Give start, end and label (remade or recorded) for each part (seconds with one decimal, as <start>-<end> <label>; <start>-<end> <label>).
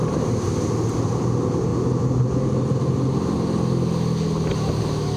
0.0-5.2 recorded